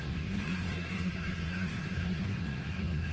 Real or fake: fake